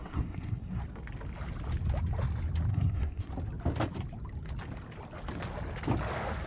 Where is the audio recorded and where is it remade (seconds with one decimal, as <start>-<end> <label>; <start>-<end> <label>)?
0.0-0.8 remade; 0.8-2.7 recorded; 2.7-3.3 remade; 3.3-6.5 recorded